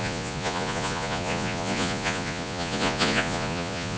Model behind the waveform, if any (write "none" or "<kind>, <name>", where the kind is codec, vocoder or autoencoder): vocoder, Vocos